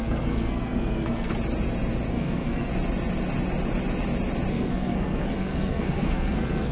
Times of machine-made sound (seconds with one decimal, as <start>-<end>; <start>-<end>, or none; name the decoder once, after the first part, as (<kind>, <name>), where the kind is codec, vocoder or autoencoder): 0.0-1.3 (codec, SNAC); 2.1-2.7; 4.5-6.7